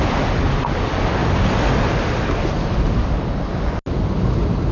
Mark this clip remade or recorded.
recorded